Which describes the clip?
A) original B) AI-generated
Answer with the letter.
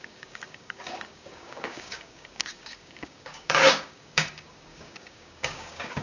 B